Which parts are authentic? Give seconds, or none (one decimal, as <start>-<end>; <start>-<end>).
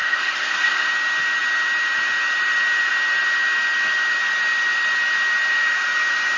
0.9-6.4